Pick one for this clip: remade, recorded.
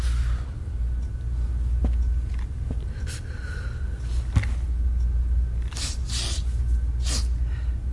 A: recorded